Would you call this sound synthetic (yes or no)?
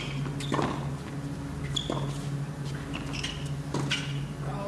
no